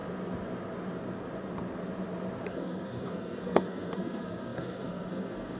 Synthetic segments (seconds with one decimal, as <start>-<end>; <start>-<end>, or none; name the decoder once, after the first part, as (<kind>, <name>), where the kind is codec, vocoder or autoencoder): 2.5-5.6 (codec, SNAC)